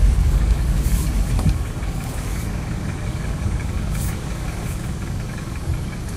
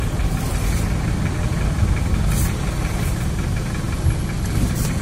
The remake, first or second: first